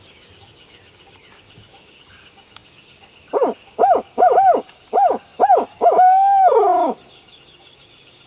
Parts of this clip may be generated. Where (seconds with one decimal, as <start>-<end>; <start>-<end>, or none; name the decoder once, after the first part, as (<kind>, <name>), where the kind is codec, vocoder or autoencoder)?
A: 0.0-8.3 (codec, DAC)